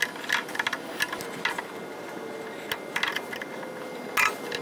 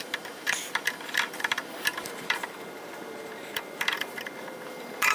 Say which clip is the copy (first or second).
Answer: second